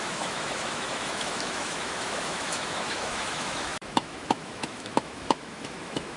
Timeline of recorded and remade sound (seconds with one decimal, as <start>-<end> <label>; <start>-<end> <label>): 0.0-6.2 remade